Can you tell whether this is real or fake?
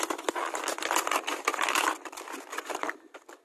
real